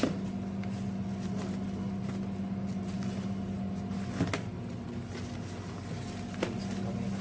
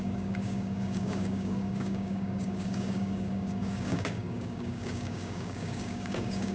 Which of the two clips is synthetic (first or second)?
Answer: second